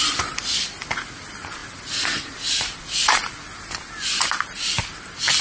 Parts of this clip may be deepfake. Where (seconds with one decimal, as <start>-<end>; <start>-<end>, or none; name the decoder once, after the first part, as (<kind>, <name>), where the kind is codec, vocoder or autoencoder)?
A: none